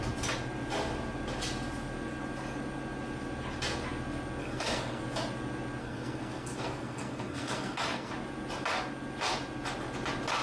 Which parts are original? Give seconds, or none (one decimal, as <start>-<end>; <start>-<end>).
0.0-4.4; 5.0-5.8; 8.1-10.4